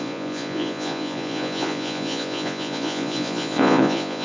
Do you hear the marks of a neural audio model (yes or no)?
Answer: yes